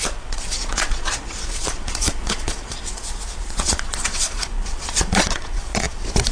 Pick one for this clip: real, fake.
fake